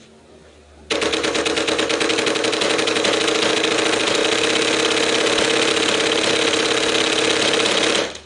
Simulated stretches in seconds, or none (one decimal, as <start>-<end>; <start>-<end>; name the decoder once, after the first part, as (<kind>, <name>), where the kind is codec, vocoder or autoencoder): none